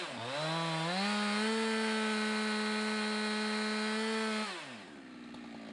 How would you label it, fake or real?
real